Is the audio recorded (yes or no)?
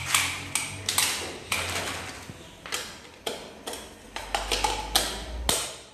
yes